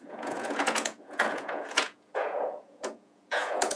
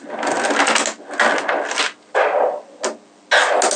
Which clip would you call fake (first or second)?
first